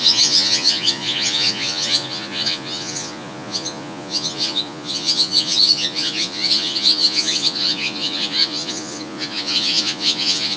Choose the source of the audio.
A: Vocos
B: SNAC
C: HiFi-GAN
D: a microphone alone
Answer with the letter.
A